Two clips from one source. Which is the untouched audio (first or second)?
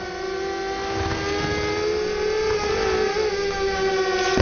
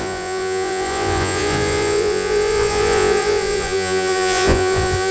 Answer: first